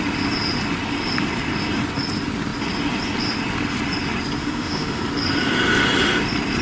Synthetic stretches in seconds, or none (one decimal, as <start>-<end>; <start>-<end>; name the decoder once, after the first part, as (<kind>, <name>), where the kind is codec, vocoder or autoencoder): 4.4-5.0 (autoencoder, DAC-VAE)